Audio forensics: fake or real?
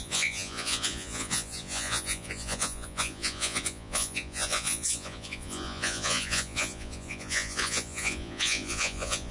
fake